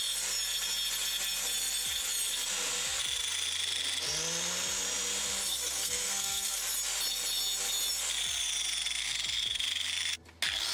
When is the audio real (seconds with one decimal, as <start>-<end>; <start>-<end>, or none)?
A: 0.0-5.5; 6.6-10.7